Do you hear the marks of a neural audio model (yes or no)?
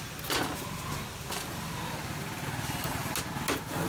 no